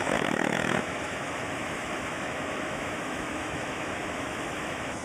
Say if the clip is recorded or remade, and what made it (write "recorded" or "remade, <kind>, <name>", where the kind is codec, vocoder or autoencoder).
remade, autoencoder, DAC-VAE